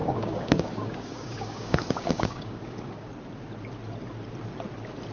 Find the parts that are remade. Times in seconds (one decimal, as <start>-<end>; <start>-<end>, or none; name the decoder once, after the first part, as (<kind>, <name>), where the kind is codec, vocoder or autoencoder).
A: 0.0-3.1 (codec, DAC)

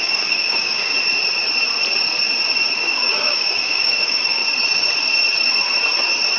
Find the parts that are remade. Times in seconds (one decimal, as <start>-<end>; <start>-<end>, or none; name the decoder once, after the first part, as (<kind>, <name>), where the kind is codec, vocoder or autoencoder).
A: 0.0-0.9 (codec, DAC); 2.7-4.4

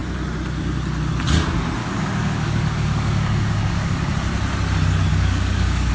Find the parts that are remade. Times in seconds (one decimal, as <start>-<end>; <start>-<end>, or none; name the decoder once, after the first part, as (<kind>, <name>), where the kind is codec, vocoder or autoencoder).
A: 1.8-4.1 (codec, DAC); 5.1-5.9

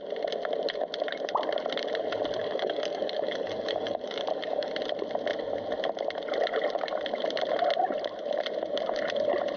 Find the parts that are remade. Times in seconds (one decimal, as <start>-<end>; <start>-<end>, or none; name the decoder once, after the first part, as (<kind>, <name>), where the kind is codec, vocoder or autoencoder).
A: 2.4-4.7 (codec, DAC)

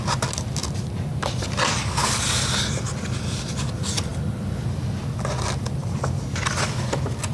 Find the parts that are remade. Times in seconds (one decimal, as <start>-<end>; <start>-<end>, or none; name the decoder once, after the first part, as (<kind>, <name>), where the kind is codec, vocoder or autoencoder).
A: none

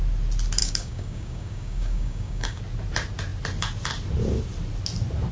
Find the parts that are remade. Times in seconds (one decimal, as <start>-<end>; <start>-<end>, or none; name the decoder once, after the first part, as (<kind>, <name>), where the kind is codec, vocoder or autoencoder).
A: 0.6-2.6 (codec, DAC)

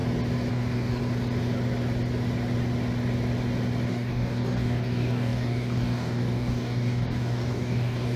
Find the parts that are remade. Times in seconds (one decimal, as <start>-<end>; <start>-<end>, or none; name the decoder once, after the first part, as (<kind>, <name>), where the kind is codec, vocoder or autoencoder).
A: 0.5-1.0 (codec, DAC); 3.9-8.2